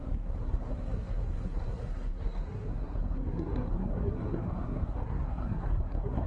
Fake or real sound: fake